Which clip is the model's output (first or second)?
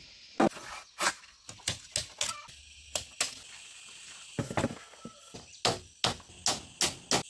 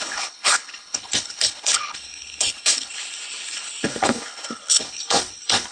second